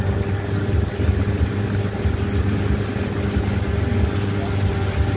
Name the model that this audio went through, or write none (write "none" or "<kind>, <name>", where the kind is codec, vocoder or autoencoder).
none